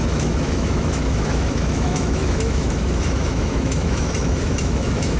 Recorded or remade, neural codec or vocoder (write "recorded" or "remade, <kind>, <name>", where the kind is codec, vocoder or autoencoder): remade, autoencoder, DAC-VAE